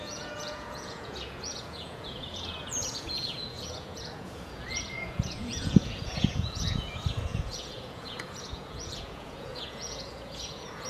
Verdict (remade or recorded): remade